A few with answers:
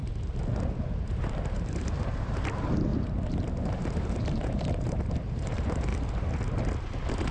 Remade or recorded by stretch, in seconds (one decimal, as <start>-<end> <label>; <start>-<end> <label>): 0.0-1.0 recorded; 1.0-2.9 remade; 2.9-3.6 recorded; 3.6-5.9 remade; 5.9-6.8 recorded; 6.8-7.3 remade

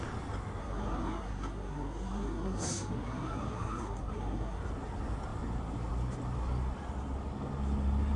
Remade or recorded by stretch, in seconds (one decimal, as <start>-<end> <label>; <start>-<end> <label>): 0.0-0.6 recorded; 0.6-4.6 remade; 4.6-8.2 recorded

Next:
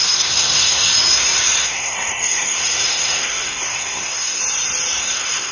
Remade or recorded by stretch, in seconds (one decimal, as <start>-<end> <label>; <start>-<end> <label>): 0.0-0.9 remade; 0.9-1.6 recorded; 1.6-4.4 remade; 4.4-5.0 recorded; 5.0-5.5 remade